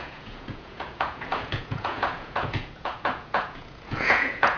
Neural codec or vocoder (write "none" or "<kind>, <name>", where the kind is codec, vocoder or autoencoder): vocoder, Vocos